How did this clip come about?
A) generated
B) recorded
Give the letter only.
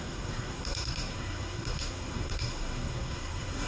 A